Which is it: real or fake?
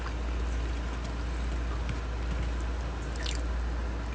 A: real